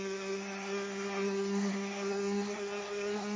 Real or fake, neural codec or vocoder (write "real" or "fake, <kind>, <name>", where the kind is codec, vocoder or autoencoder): fake, codec, SNAC